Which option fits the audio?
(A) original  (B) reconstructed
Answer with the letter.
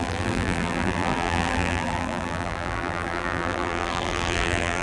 B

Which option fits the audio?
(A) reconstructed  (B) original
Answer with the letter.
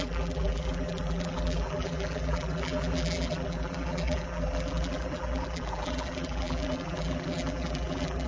A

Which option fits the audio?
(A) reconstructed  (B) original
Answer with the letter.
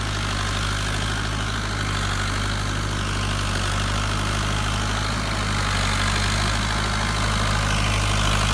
B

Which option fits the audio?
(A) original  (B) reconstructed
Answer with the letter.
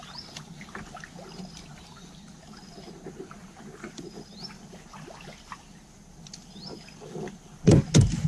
A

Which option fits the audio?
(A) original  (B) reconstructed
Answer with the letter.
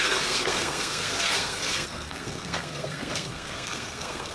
B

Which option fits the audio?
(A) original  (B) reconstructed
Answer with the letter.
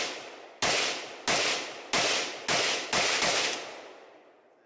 A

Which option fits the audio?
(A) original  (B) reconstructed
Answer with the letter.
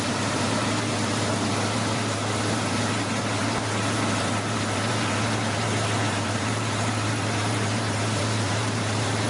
B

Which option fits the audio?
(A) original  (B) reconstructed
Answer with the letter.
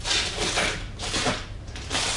B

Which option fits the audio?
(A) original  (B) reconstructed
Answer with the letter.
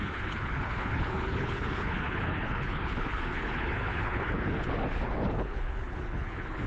B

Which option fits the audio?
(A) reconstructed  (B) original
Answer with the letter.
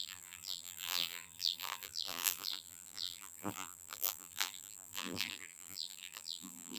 A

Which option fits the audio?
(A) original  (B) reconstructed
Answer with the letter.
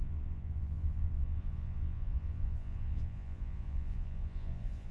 B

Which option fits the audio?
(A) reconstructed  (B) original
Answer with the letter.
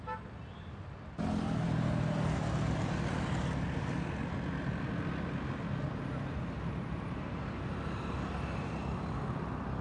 B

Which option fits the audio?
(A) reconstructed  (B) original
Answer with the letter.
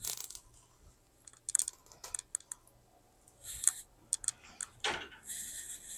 B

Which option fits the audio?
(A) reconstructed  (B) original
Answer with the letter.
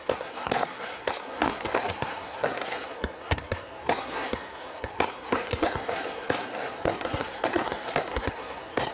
A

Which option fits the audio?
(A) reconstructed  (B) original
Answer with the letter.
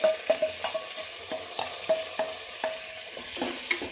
B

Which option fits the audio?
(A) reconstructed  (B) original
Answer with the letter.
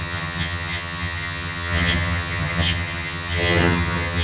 A